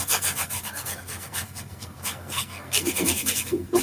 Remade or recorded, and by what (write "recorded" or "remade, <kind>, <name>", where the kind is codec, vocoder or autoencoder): remade, codec, SNAC